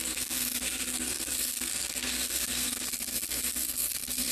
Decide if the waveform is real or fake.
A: fake